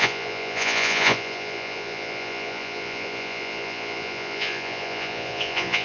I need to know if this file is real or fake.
fake